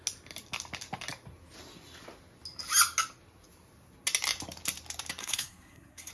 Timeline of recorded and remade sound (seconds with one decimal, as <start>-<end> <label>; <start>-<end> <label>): 0.0-5.2 recorded; 5.2-6.1 remade